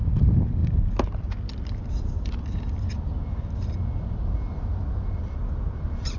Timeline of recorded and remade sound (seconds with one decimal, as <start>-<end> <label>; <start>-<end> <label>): 0.0-6.2 recorded